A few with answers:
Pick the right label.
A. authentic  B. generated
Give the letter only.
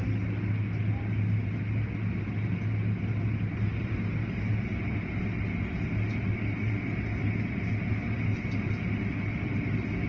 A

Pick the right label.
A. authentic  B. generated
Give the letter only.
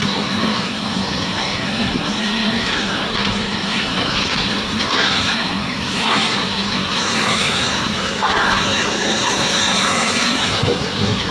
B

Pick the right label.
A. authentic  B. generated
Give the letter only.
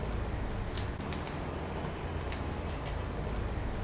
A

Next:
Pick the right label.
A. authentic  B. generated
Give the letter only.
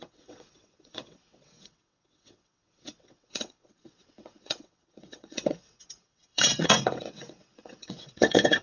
B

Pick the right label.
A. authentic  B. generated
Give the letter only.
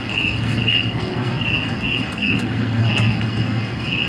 B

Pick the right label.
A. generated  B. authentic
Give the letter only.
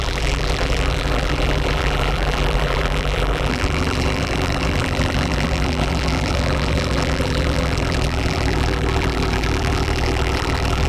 A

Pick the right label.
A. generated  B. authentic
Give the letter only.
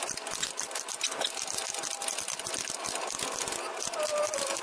B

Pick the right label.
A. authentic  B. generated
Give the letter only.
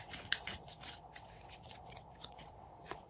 B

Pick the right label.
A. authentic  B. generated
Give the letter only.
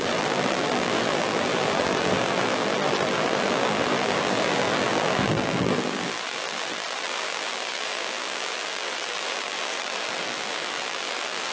B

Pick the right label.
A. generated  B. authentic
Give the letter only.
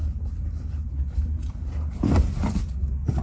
B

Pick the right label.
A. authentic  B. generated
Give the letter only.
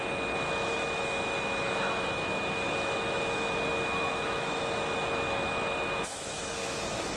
B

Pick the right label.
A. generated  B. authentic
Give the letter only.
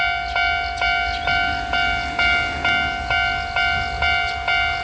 B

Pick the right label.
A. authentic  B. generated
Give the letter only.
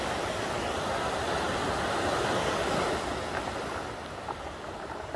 A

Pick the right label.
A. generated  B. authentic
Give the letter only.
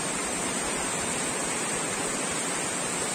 B